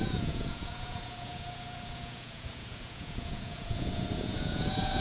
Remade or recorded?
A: remade